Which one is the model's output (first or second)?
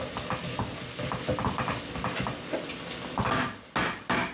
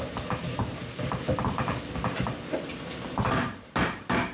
second